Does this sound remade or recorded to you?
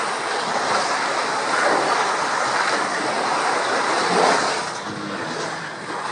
recorded